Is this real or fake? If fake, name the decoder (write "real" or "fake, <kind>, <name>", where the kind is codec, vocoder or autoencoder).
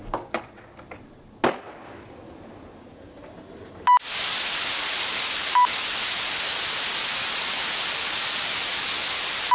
real